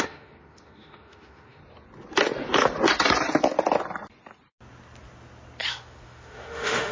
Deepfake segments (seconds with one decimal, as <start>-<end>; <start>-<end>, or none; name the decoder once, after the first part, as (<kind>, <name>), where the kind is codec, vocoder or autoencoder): 0.0-1.6 (autoencoder, DAC-VAE); 5.7-6.9